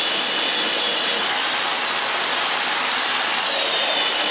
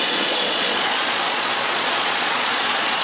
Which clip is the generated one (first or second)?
second